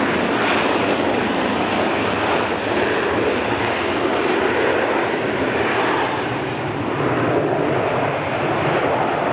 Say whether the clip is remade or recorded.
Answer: recorded